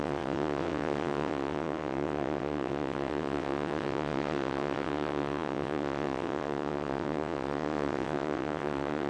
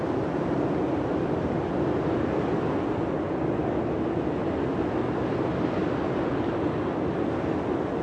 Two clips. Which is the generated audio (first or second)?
first